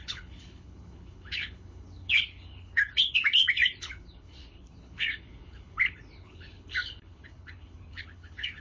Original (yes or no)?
no